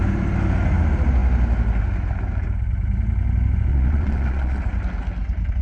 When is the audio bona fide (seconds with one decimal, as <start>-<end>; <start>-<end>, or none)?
0.0-3.7; 4.6-5.6